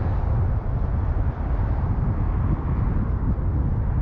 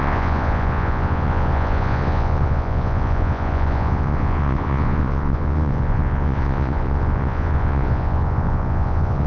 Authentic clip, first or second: first